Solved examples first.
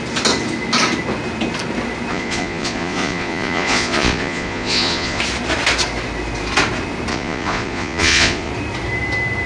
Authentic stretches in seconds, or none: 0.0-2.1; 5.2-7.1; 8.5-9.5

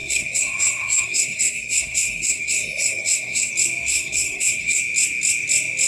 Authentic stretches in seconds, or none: 3.5-3.9; 4.8-5.9

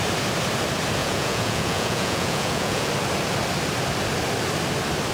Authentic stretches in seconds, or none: 0.0-1.0; 2.9-5.1

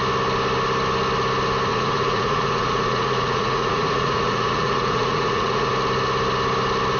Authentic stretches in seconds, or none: 0.0-1.7; 5.7-7.0

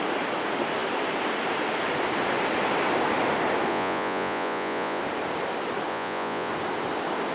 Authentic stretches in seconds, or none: 0.0-3.7; 5.0-5.9; 6.5-7.3

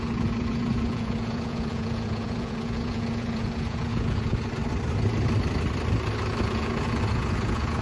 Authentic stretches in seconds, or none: 4.6-6.4

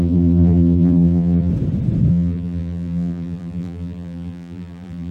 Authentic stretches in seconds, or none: 1.5-2.1

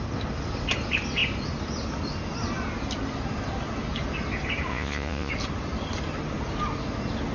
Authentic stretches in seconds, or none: 0.0-4.7; 5.3-7.3